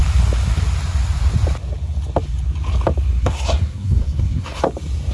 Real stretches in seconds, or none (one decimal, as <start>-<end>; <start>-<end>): 0.0-3.2; 4.6-5.1